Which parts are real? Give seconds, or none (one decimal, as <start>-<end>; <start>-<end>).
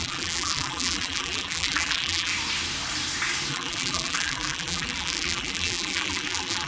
2.3-3.5